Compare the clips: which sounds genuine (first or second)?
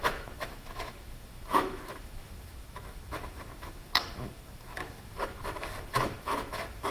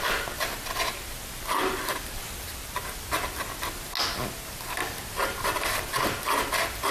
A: second